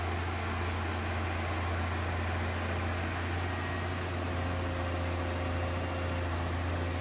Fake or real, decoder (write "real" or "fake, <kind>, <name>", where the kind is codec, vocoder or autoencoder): real